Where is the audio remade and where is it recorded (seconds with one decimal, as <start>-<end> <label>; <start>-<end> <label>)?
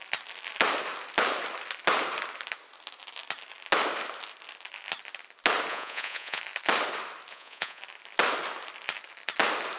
0.0-5.7 recorded; 5.7-6.4 remade; 6.4-7.3 recorded; 7.3-7.8 remade; 7.8-9.8 recorded